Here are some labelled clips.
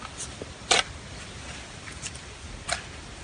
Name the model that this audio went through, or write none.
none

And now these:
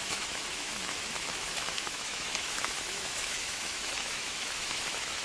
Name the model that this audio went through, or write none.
autoencoder, DAC-VAE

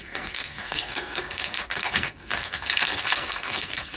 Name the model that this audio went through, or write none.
codec, SNAC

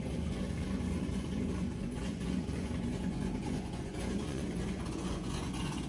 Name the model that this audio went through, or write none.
vocoder, Vocos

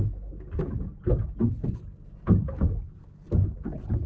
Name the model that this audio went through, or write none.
none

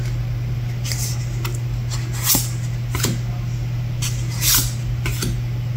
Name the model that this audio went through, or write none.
none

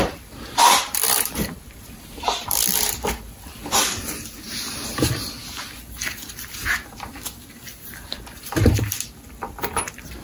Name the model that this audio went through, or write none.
vocoder, BigVGAN v2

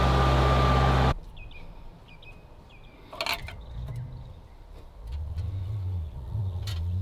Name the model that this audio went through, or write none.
none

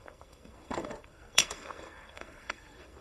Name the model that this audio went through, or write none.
codec, SNAC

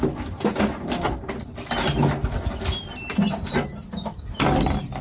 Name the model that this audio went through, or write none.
none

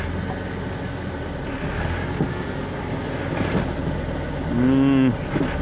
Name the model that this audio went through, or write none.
none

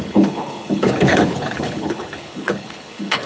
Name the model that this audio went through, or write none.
codec, HILCodec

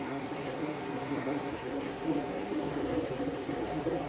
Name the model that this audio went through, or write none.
codec, SNAC